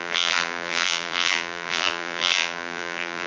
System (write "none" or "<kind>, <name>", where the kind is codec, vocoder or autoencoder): vocoder, BigVGAN v2